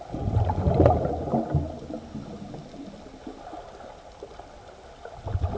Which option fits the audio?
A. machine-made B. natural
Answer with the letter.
B